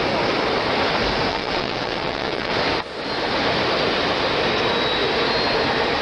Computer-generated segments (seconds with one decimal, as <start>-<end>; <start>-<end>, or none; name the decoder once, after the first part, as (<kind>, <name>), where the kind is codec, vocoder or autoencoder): 1.3-2.5 (vocoder, WaveNeXt)